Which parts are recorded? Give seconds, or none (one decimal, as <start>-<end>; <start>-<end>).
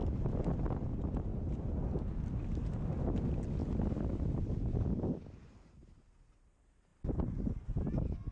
0.6-3.6; 5.5-6.9; 7.5-8.3